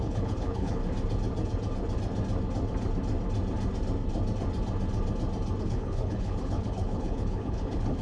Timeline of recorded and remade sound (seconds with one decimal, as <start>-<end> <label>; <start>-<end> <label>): 0.0-0.8 remade; 0.8-5.6 recorded; 5.6-8.0 remade